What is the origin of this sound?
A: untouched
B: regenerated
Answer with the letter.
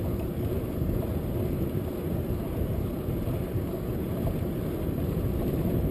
B